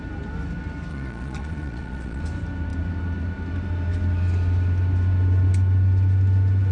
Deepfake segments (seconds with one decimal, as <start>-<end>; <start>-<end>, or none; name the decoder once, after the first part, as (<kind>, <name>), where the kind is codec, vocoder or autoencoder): 0.9-2.2 (vocoder, Vocos)